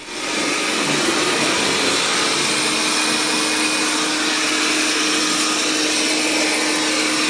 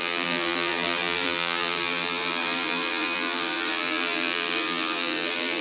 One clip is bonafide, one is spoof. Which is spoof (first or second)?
second